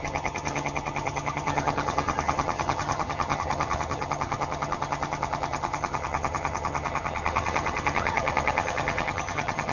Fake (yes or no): yes